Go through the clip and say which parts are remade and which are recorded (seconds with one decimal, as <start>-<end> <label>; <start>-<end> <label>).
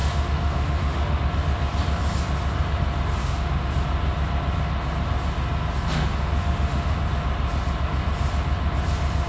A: 0.0-1.2 remade; 1.2-3.2 recorded; 3.2-3.7 remade; 3.7-5.9 recorded; 5.9-7.0 remade; 7.0-9.3 recorded